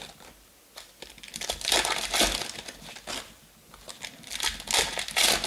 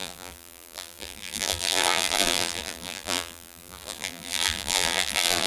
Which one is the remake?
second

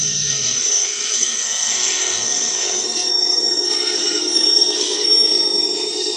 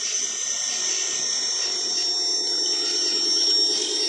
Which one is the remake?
first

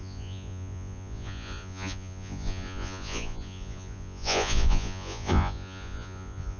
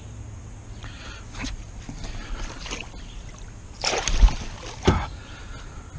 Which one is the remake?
first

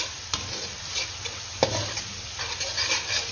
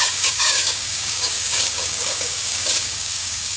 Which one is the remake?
second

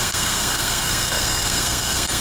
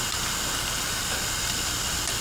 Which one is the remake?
first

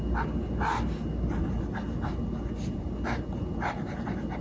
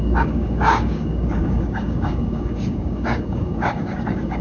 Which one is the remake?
second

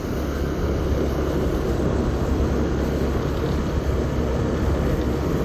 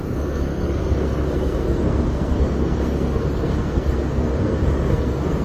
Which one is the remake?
second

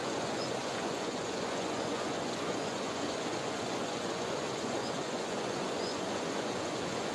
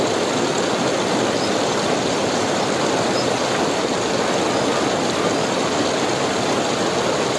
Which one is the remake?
first